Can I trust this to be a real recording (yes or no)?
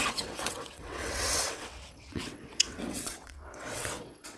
no